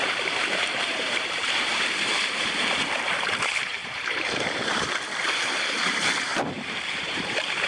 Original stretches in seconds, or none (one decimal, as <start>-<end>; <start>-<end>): none